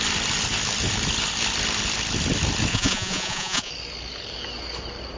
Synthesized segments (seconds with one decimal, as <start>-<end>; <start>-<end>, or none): 2.7-3.7